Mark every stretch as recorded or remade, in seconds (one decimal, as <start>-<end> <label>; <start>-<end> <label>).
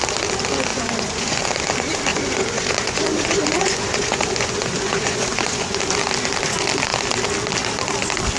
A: 0.0-0.7 recorded; 0.7-1.4 remade; 1.4-2.1 recorded; 2.1-5.8 remade; 5.8-8.4 recorded